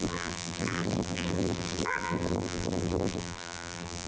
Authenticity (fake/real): fake